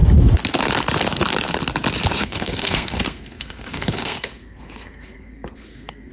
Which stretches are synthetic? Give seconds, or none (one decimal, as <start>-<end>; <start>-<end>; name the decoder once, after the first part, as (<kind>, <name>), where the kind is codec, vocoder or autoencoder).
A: 2.1-6.1 (codec, SNAC)